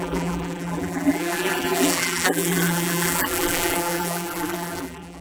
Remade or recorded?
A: remade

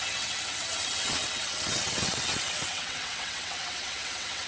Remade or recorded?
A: remade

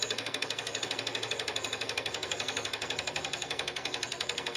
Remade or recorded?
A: remade